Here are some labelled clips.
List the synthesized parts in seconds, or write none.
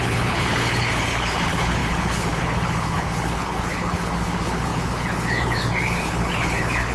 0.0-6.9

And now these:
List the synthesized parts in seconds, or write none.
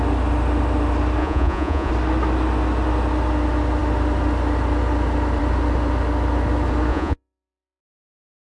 1.2-1.9; 6.9-7.8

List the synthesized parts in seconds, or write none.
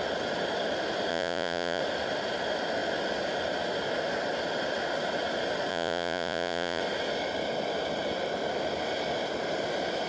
1.1-1.8; 5.7-6.8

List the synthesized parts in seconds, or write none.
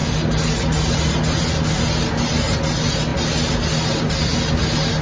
none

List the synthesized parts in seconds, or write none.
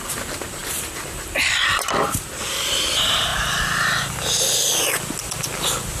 none